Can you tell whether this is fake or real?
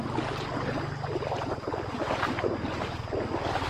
real